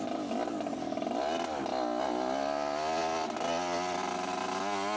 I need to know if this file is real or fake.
real